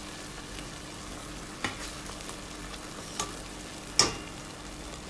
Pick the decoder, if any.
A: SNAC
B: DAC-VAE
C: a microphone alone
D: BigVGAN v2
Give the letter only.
C